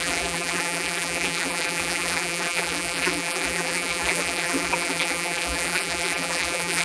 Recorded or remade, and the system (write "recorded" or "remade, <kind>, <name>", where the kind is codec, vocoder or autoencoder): remade, vocoder, BigVGAN v2